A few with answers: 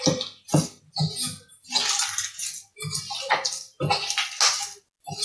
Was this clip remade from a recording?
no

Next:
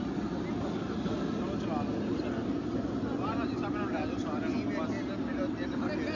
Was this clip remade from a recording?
no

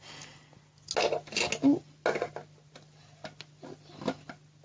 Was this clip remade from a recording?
no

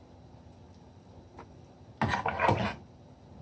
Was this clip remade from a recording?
no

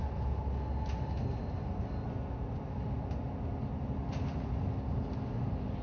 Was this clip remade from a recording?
no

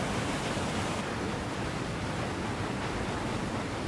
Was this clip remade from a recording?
yes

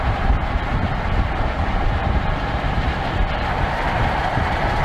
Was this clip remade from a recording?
yes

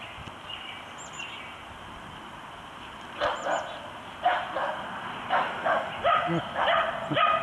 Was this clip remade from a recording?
yes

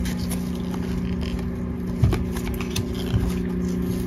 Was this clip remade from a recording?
no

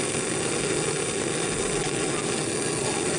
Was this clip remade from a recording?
no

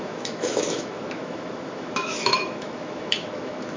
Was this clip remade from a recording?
yes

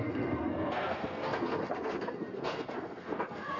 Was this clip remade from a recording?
yes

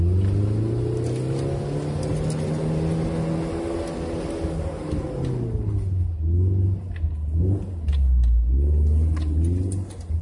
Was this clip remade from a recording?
no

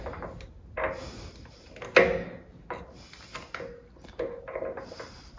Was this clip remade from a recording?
no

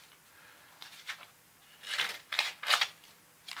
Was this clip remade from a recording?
no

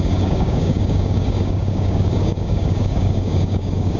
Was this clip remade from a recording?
yes